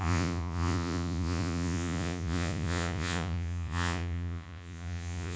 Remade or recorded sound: remade